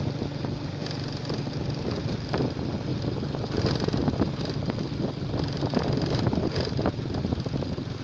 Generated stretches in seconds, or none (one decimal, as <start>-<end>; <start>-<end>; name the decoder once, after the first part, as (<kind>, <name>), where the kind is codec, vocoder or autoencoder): none

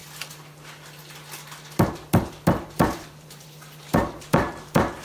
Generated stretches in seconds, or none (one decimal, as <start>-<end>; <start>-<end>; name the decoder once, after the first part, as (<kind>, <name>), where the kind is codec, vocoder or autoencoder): 3.0-5.0 (vocoder, BigVGAN v2)

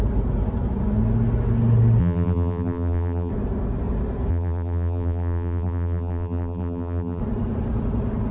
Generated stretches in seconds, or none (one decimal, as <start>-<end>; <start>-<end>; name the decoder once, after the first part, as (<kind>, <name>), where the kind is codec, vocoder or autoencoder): 2.0-3.3 (vocoder, BigVGAN v2); 4.3-7.2

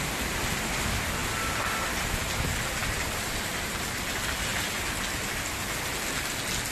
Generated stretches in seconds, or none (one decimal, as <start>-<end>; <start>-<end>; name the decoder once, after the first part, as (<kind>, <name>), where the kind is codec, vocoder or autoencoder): none

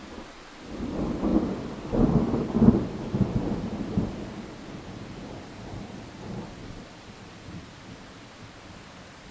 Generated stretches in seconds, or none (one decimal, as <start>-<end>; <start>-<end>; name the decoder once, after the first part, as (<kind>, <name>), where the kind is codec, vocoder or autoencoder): none

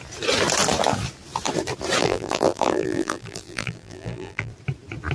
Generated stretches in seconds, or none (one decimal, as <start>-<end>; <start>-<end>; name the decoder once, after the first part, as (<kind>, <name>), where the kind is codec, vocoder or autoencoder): 2.0-4.5 (vocoder, BigVGAN v2)

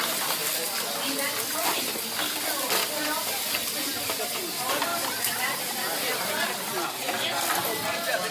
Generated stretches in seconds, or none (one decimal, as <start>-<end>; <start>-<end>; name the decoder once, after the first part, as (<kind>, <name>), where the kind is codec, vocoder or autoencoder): 4.9-6.7 (vocoder, BigVGAN v2)

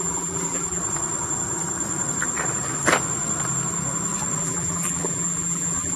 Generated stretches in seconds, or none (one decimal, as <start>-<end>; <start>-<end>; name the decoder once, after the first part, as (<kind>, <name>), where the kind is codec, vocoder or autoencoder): 0.0-0.8 (vocoder, BigVGAN v2); 4.4-6.0